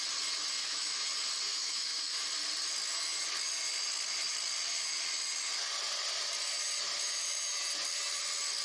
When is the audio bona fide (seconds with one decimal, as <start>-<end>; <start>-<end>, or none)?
0.0-0.6; 1.1-1.5; 2.2-8.6